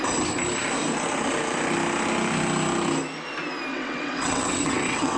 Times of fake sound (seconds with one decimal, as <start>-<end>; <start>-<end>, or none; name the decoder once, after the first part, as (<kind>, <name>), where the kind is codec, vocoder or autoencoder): 3.7-5.2 (vocoder, WaveNeXt)